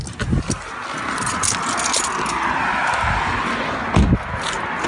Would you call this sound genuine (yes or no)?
yes